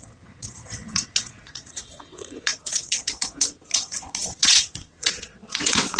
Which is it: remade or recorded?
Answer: remade